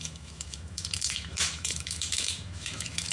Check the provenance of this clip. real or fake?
fake